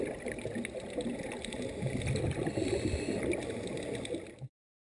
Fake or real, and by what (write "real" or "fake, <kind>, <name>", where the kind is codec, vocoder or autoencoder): real